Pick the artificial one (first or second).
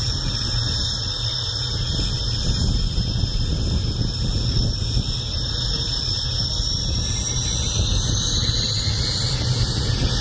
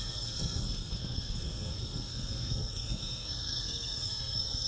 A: second